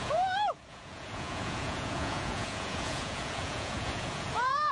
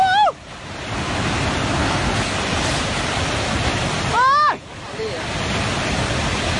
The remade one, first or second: first